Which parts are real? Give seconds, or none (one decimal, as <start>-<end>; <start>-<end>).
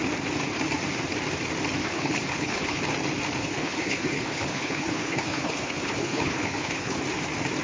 0.0-1.8; 2.8-3.4; 7.0-7.6